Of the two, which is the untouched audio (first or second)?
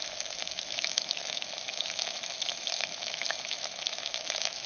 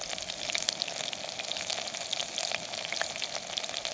second